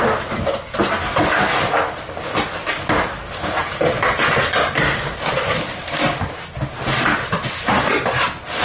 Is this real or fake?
real